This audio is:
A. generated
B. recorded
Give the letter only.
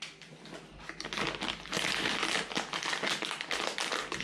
B